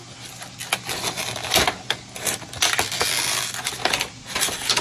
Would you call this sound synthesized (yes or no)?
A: no